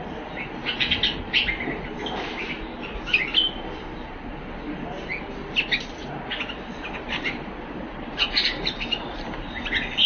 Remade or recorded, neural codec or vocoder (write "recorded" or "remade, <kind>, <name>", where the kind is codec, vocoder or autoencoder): recorded